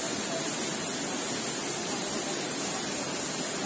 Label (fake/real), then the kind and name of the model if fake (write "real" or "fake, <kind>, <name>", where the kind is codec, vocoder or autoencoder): real